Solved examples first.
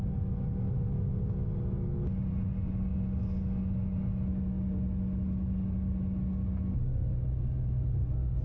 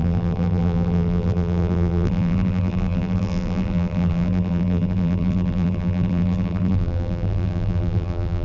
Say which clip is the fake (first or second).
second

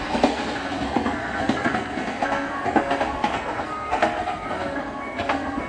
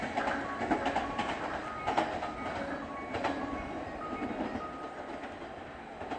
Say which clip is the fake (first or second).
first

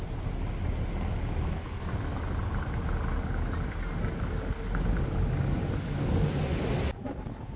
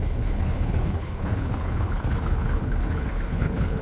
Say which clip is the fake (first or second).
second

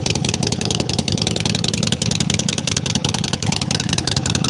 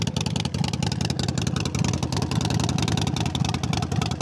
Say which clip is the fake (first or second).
first